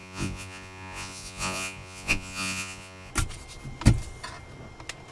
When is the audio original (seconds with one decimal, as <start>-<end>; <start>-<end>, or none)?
3.1-5.1